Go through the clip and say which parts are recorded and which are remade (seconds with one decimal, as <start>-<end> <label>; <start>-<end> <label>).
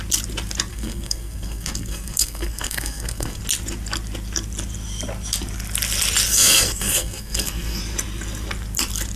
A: 0.0-0.7 recorded; 0.7-3.4 remade; 3.4-6.3 recorded; 6.3-7.8 remade; 7.8-9.2 recorded